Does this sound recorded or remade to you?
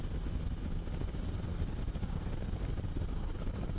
recorded